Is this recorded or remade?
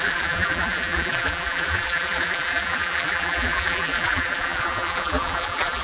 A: remade